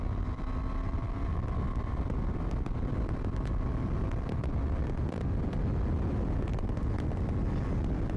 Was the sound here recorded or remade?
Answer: recorded